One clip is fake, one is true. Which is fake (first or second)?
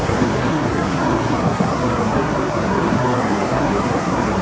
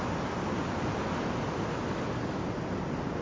first